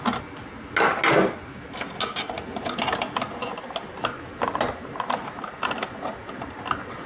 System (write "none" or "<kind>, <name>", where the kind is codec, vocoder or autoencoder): none